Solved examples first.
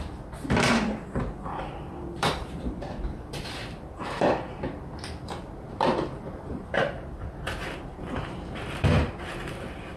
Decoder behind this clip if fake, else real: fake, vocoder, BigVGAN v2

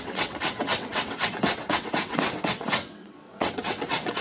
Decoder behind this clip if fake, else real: fake, vocoder, WaveNeXt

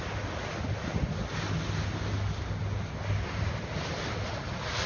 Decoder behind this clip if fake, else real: real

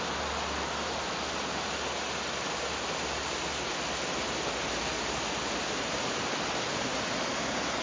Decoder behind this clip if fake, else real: real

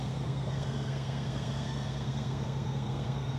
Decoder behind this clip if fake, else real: fake, codec, SNAC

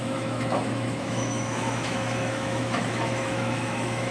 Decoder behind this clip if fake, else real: fake, autoencoder, DAC-VAE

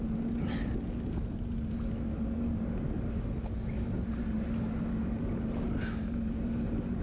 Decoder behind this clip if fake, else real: real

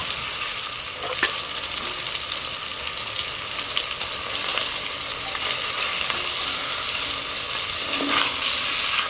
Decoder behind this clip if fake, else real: real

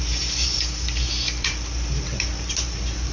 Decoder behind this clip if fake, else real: fake, vocoder, BigVGAN v2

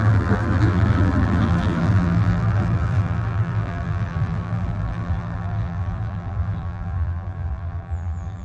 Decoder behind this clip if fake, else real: fake, vocoder, BigVGAN v2